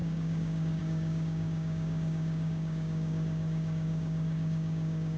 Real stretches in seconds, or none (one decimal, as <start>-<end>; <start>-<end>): none